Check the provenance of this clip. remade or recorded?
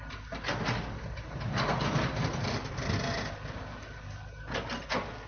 recorded